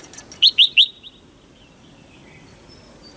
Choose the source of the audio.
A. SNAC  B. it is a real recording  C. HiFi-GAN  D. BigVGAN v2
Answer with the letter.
B